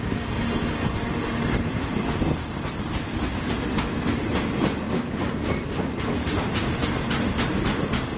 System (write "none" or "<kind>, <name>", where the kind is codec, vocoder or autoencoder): none